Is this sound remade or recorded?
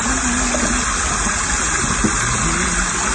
recorded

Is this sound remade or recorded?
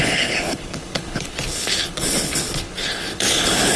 remade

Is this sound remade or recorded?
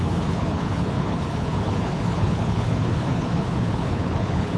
remade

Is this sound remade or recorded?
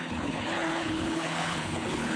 remade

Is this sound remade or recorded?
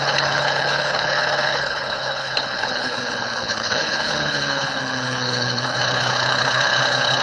remade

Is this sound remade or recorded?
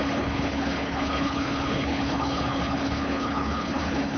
remade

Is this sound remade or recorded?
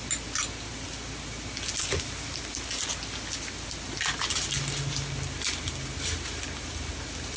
recorded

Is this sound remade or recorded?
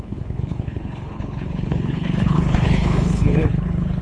remade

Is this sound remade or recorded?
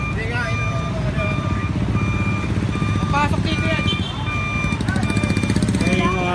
recorded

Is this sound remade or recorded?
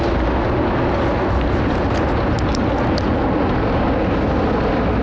recorded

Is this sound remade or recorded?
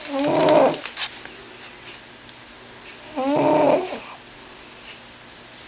recorded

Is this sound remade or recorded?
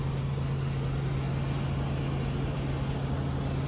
recorded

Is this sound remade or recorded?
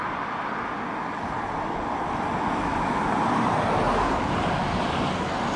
recorded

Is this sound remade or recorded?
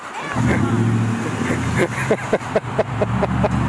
recorded